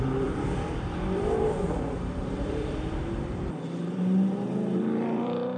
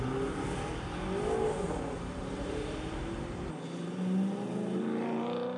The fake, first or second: first